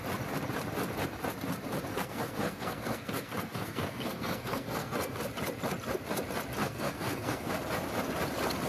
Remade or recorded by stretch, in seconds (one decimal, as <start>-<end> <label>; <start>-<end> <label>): 0.0-1.9 recorded; 1.9-5.2 remade; 5.2-6.6 recorded; 6.6-7.5 remade; 7.5-8.7 recorded